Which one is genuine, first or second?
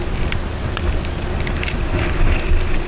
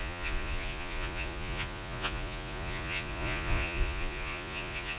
first